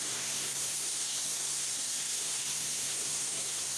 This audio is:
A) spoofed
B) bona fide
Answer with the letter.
A